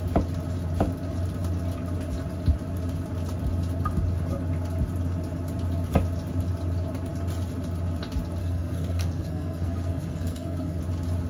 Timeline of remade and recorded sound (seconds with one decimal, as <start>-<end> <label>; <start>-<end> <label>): 0.0-8.4 recorded; 8.4-10.8 remade; 10.8-11.3 recorded